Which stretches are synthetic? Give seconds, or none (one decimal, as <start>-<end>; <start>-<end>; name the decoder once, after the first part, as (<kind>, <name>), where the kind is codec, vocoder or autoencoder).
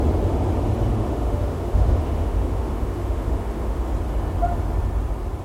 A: 0.9-3.9 (autoencoder, DAC-VAE)